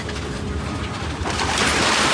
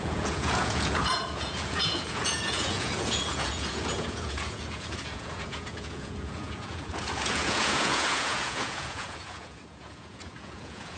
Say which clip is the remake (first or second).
second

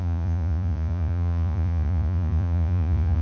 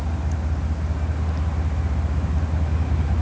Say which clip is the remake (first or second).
first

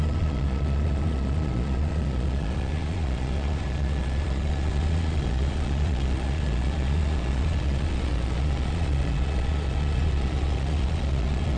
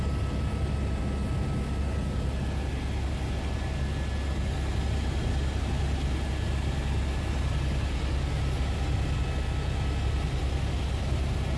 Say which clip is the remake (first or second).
first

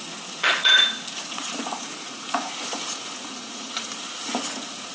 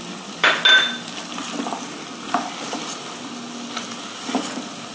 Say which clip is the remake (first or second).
first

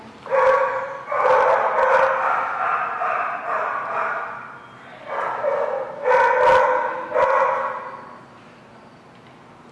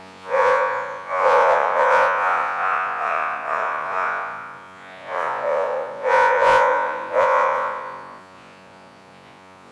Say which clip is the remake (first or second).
second